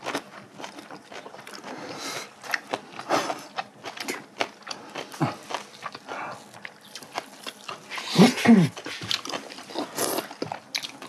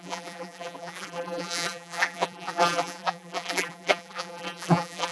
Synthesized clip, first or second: second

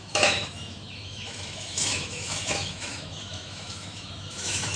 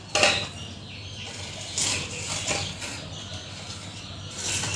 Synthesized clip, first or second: first